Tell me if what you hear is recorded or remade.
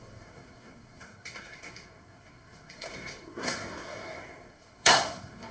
remade